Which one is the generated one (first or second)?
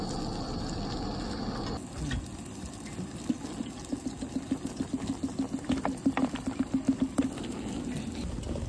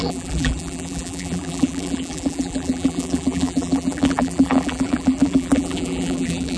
second